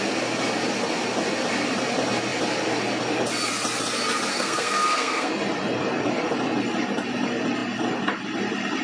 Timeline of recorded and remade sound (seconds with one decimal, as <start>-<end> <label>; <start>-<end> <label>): 0.0-4.3 recorded; 4.3-5.3 remade; 5.3-8.8 recorded